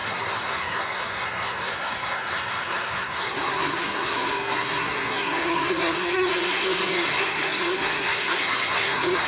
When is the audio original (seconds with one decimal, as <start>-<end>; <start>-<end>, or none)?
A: none